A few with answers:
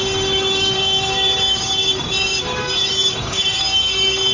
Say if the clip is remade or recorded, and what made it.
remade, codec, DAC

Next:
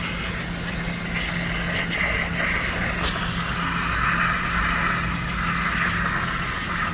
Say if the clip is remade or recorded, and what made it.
recorded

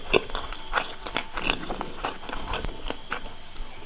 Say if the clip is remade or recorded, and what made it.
recorded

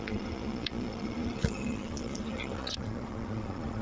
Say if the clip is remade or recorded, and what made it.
remade, vocoder, Vocos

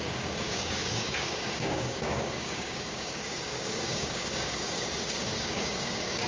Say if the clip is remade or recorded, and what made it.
remade, codec, DAC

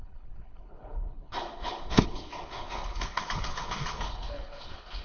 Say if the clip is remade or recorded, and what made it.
remade, codec, HILCodec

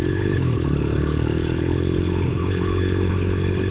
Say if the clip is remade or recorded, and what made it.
remade, codec, HILCodec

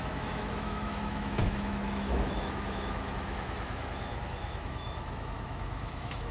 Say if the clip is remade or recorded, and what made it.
remade, autoencoder, DAC-VAE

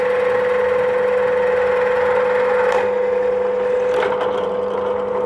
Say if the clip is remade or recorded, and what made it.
recorded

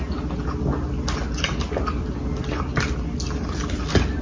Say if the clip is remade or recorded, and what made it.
recorded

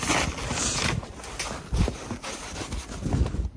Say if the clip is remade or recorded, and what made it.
recorded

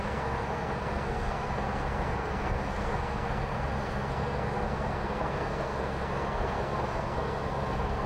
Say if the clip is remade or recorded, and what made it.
remade, codec, SNAC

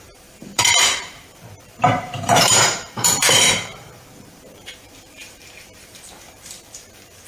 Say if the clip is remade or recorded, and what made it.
remade, vocoder, BigVGAN v2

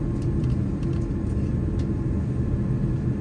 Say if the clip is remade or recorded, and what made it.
recorded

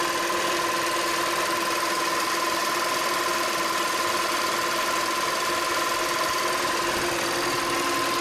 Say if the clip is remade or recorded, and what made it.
recorded